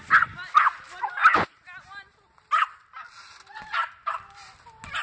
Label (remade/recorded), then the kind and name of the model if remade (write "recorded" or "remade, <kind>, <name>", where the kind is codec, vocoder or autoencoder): recorded